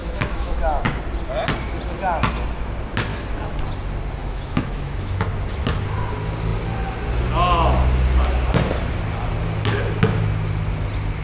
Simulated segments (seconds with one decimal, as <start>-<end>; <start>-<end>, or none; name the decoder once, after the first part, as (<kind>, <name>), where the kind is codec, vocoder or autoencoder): 0.0-1.0 (autoencoder, DAC-VAE); 3.1-3.6; 4.2-5.3